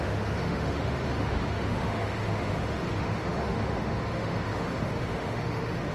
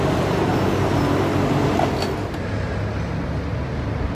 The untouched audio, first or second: second